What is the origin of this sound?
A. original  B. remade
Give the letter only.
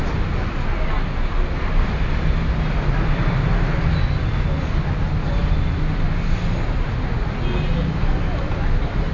A